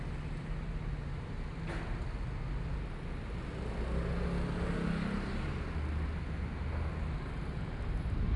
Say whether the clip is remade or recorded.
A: recorded